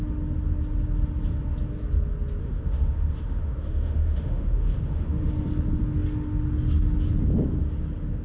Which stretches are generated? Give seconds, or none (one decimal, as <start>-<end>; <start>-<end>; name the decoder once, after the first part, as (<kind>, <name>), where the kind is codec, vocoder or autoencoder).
2.4-5.3 (autoencoder, DAC-VAE)